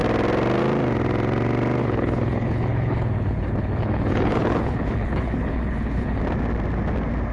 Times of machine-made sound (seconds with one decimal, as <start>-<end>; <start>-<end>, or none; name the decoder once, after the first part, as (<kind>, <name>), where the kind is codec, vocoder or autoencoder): 1.8-6.2 (codec, HILCodec)